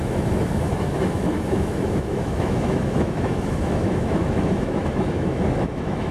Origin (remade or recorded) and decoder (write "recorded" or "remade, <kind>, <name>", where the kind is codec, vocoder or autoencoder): remade, autoencoder, DAC-VAE